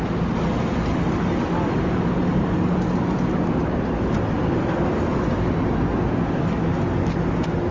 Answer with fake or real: real